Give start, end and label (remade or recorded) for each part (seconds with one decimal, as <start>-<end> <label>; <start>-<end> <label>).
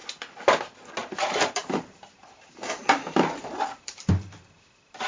0.0-1.0 recorded; 1.0-4.1 remade; 4.1-5.1 recorded